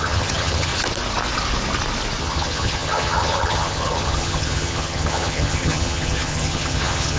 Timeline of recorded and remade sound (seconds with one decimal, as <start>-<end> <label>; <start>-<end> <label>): 0.0-0.7 remade; 0.7-2.2 recorded; 2.2-7.2 remade